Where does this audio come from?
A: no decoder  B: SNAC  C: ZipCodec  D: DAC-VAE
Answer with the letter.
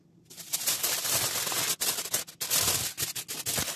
A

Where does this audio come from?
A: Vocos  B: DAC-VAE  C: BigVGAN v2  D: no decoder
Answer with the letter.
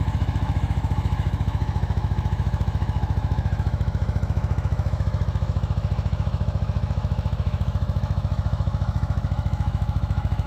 B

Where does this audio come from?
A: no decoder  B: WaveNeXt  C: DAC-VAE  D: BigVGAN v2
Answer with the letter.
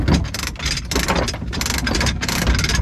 A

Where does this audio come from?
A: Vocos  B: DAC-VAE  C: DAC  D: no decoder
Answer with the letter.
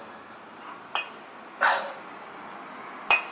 D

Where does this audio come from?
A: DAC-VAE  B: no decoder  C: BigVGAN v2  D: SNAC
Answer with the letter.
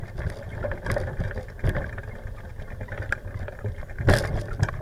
B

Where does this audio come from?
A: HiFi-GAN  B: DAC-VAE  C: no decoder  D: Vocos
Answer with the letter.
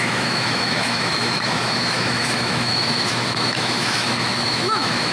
B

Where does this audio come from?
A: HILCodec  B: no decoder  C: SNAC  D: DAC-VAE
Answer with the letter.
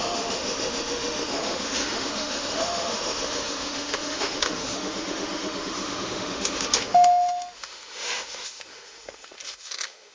D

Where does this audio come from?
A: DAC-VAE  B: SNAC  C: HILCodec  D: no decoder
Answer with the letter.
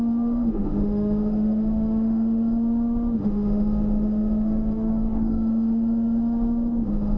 A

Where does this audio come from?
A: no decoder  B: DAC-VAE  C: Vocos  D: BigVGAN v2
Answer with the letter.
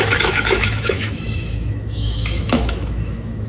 B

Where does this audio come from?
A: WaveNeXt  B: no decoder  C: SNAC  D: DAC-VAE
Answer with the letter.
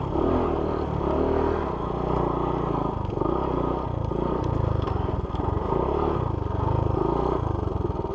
B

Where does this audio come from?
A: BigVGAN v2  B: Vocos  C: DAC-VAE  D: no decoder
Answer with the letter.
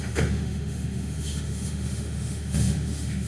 C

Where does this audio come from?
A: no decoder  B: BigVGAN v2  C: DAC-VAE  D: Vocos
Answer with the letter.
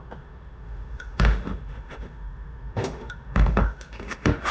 C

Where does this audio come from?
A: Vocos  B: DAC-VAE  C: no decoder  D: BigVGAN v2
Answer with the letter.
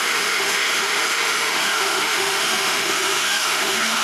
B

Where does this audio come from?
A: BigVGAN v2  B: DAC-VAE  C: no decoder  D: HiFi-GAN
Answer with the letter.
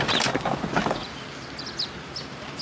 C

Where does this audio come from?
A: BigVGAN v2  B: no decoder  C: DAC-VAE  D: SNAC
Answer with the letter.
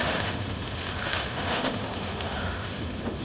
C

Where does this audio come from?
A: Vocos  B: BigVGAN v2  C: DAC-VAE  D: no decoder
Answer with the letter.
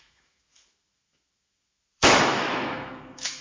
C